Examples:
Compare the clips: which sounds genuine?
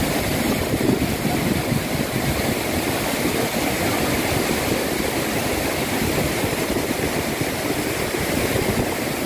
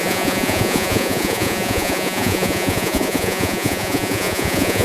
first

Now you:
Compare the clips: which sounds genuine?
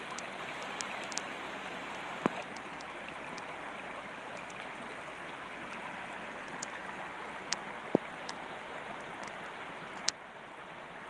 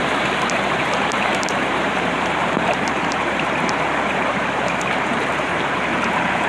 first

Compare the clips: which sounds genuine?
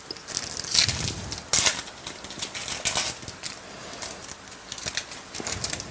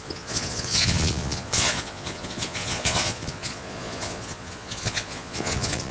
first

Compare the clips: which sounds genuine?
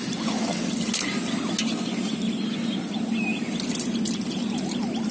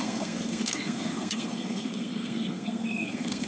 first